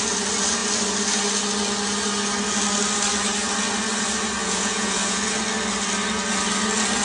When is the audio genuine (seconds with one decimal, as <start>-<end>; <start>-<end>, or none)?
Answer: 0.0-4.4; 5.2-7.0